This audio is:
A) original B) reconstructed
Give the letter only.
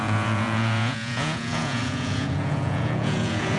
B